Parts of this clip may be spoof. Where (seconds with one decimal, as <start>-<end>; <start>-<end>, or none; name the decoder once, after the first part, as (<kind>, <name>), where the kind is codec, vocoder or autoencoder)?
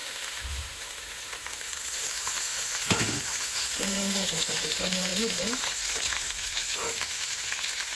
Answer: 0.0-8.0 (autoencoder, DAC-VAE)